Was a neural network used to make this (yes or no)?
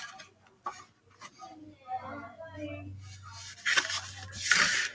no